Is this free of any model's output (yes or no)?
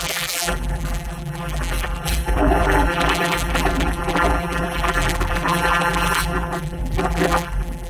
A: no